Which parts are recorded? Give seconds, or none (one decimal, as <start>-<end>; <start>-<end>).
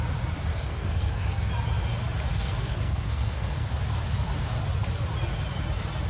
0.0-0.5; 1.5-2.3; 3.7-6.1